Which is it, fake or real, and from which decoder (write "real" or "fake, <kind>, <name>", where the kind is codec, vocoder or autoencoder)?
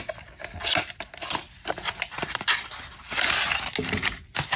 real